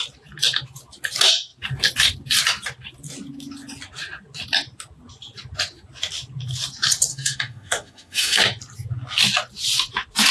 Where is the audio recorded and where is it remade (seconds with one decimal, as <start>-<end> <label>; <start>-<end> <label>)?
0.0-7.1 recorded; 7.1-8.4 remade; 8.4-10.3 recorded